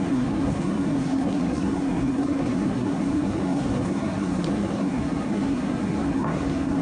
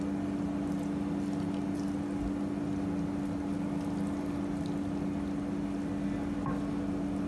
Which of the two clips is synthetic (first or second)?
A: first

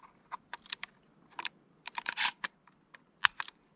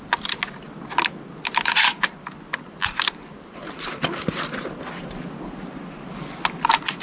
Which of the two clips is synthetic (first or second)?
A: first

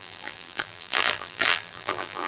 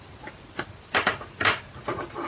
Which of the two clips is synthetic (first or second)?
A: first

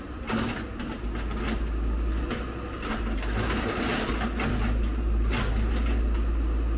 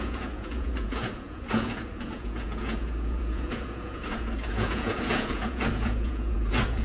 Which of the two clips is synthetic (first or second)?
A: second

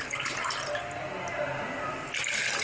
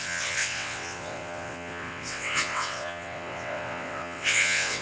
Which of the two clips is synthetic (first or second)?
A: second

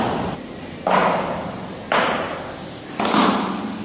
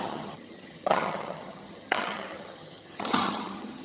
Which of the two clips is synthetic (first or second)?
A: second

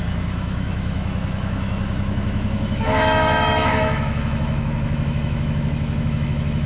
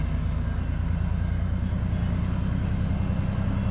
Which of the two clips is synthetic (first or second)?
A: first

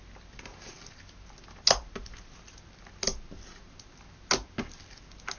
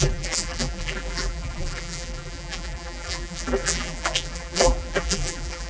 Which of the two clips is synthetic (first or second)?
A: second